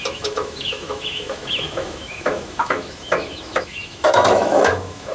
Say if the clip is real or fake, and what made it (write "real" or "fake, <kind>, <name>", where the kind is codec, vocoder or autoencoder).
fake, autoencoder, DAC-VAE